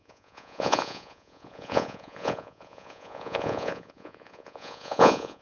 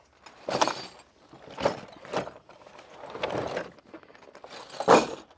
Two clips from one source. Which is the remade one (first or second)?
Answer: first